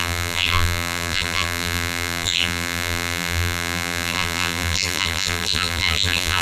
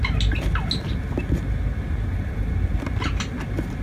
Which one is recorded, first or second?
second